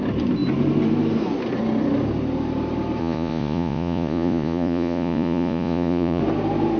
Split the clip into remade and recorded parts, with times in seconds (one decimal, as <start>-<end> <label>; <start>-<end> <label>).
0.0-3.0 recorded; 3.0-6.2 remade; 6.2-6.8 recorded